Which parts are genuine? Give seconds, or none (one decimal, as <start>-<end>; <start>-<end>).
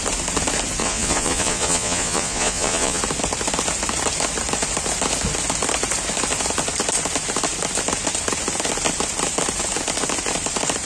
0.0-0.8; 3.0-10.9